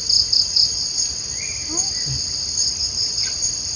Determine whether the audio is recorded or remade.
recorded